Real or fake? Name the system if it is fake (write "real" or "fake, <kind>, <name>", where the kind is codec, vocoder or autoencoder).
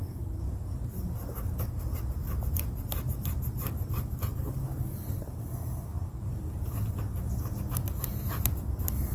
real